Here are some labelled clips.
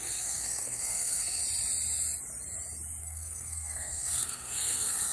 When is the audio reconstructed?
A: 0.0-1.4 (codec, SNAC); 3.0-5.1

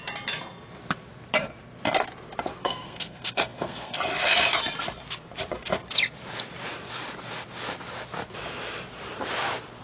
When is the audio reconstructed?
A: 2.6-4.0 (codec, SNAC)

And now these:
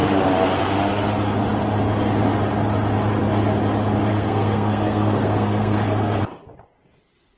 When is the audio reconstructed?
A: 4.1-6.2 (codec, SNAC)

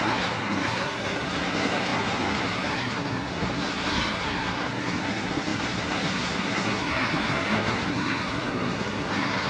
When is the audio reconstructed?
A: 0.0-9.5 (codec, SNAC)

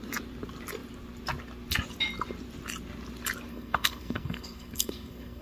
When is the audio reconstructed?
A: 3.5-5.4 (codec, SNAC)